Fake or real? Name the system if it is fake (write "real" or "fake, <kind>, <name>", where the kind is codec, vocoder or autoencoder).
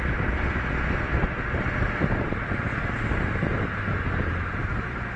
real